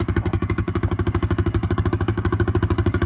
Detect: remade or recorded remade